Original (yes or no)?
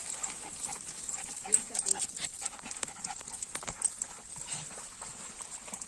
yes